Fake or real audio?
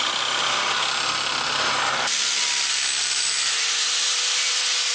real